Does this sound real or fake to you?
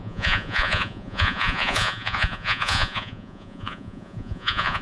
fake